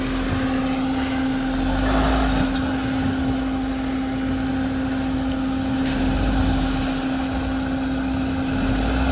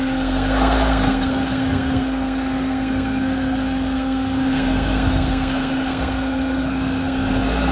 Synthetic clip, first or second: second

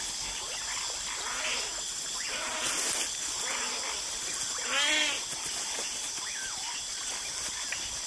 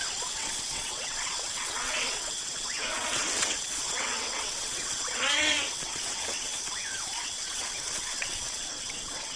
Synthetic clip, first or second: second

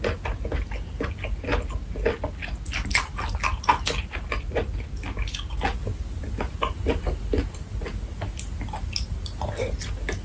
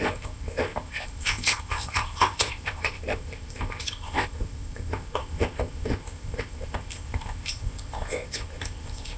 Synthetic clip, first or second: second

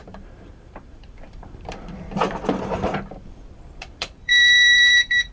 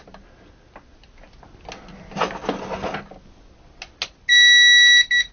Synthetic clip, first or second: first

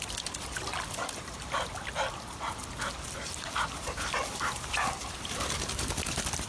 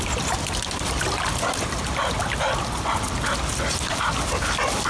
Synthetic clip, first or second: first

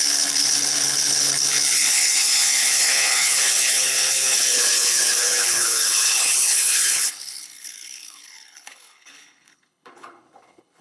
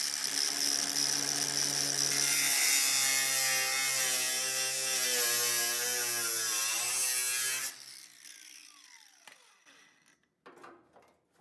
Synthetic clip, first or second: first